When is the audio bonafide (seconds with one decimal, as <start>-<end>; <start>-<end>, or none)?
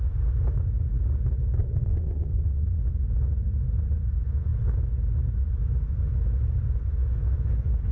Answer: 0.0-1.6; 2.8-7.9